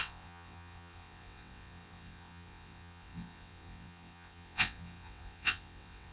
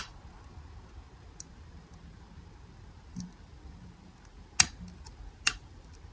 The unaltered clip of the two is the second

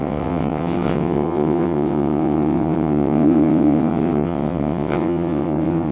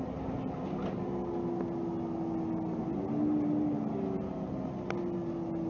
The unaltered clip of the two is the second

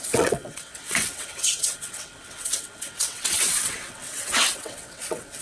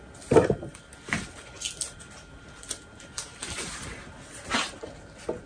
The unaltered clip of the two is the second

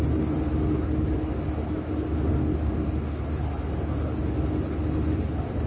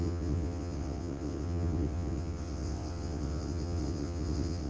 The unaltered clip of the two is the first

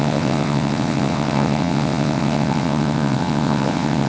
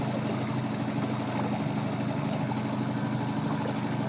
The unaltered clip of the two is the second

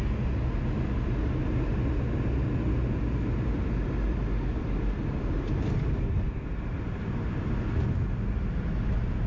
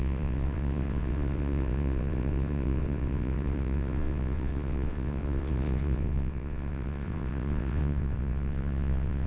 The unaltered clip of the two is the first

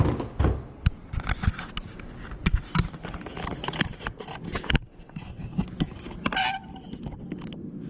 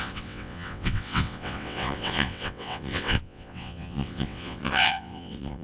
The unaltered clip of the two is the first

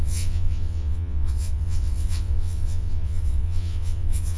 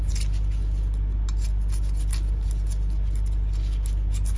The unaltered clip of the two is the second